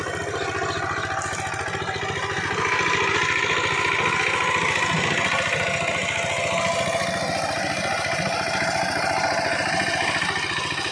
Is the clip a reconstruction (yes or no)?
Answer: no